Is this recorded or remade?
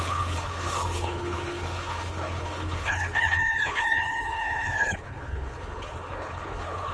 remade